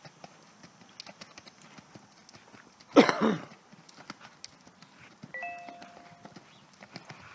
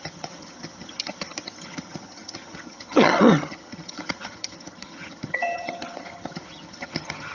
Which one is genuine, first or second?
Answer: first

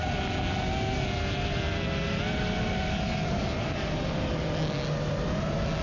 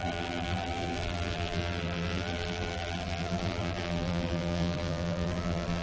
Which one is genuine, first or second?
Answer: first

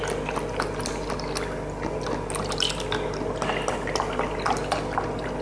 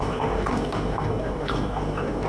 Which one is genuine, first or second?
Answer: first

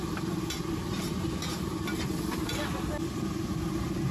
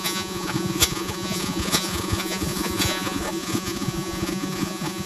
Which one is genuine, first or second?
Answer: first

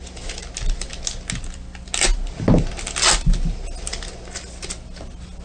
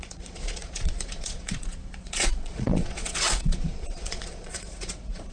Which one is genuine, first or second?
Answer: first